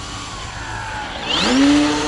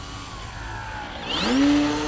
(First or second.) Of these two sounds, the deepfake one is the first